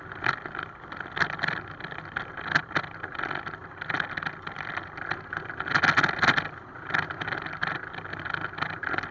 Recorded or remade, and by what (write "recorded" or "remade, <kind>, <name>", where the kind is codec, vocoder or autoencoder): recorded